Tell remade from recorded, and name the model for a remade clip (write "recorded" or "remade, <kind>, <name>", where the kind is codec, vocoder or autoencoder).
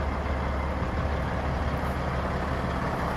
recorded